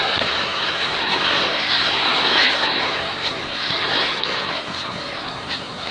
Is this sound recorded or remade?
remade